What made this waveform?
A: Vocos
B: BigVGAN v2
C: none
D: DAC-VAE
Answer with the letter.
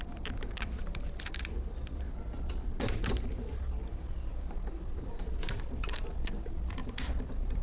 B